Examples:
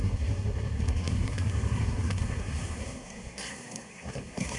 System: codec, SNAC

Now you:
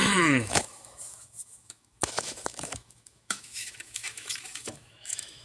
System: autoencoder, DAC-VAE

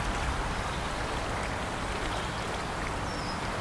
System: none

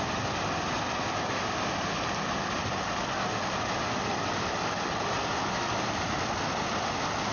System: none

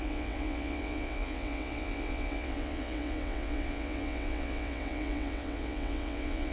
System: vocoder, WaveNeXt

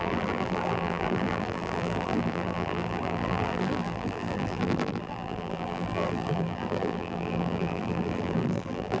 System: vocoder, BigVGAN v2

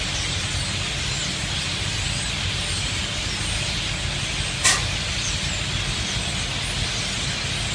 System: none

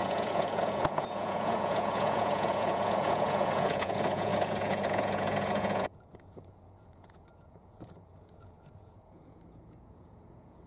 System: vocoder, Vocos